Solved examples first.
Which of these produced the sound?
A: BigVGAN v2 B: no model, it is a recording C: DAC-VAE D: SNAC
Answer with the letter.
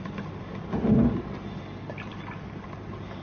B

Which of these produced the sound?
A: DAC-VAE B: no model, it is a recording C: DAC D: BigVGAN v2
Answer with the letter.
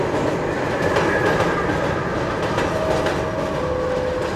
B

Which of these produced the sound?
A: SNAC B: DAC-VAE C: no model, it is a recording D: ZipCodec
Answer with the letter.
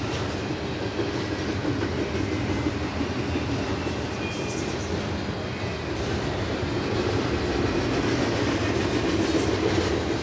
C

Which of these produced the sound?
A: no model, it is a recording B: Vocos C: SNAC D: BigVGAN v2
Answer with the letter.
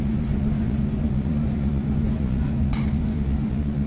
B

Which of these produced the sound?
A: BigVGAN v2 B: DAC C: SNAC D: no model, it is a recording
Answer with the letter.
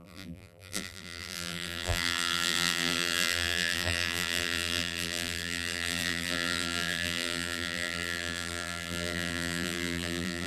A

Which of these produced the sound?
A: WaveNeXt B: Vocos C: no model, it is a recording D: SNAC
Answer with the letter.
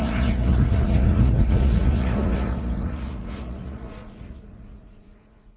B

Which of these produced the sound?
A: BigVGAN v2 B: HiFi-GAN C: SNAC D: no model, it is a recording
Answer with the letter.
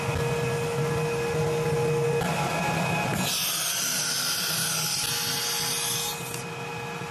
D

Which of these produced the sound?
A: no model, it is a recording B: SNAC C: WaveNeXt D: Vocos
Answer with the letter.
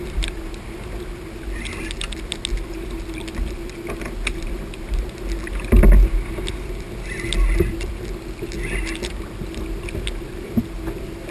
A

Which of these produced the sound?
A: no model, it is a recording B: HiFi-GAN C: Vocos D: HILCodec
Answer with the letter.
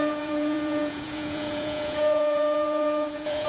C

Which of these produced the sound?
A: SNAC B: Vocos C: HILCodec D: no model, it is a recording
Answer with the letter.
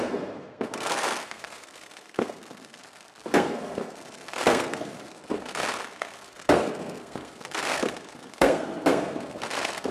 A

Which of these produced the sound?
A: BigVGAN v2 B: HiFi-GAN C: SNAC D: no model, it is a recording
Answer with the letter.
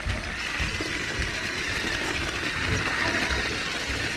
D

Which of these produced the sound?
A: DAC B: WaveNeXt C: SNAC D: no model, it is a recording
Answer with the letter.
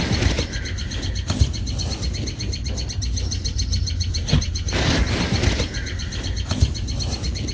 D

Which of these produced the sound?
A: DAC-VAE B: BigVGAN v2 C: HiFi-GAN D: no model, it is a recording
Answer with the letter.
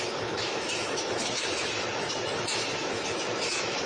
A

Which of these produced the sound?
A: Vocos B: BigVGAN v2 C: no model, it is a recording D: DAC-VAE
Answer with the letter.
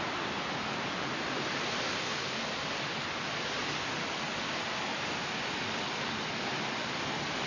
C